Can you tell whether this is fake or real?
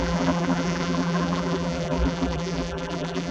fake